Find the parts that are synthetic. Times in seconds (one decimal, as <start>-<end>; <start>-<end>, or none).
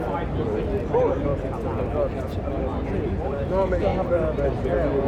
none